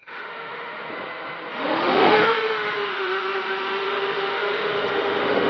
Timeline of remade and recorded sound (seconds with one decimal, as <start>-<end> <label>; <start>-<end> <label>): 0.0-0.9 remade; 0.9-1.5 recorded; 1.5-5.5 remade